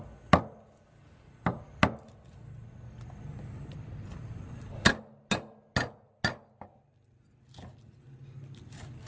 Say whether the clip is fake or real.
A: real